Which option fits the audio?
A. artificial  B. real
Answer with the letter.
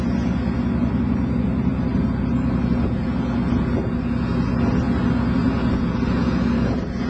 B